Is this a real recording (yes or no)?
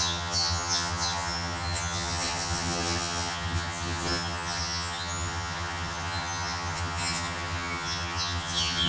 no